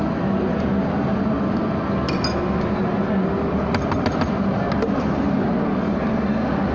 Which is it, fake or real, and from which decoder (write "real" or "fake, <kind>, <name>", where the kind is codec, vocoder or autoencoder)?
real